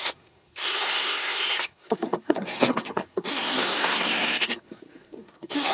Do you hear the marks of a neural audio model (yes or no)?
yes